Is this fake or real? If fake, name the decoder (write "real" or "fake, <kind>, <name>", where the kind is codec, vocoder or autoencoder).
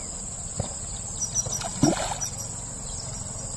real